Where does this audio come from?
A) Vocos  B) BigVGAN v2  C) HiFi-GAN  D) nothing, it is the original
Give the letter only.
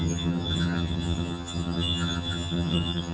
C